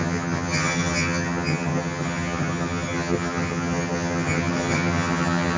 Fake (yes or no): yes